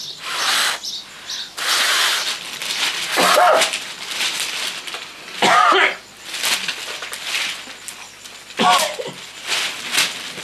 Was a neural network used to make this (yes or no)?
no